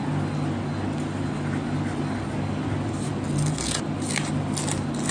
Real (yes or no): yes